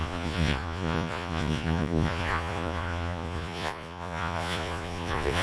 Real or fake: fake